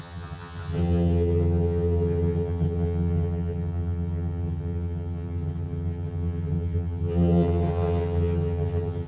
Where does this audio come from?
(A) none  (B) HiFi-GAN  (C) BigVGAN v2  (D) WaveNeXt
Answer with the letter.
B